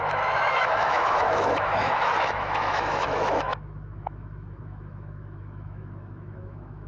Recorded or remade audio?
remade